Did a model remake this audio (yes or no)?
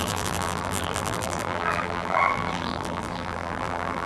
yes